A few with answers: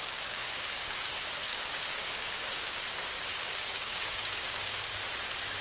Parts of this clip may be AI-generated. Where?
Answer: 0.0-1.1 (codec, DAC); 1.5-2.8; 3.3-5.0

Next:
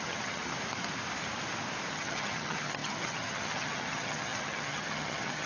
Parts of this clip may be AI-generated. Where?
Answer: 0.0-0.5 (vocoder, HiFi-GAN); 1.9-5.5

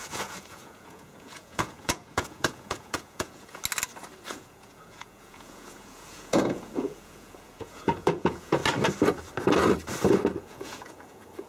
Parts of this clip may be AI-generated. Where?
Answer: 0.0-3.6 (vocoder, Vocos); 4.3-8.6; 10.4-11.5

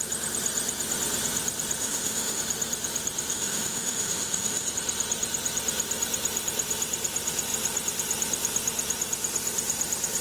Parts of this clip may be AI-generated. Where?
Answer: 1.8-2.4 (autoencoder, DAC-VAE); 3.3-4.7

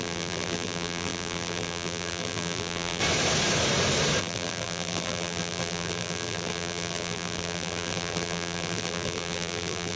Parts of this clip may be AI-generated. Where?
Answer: 0.0-3.0 (vocoder, BigVGAN v2); 4.2-10.0

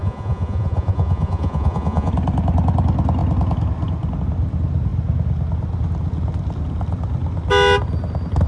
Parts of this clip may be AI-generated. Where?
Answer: 0.0-2.1 (vocoder, Vocos)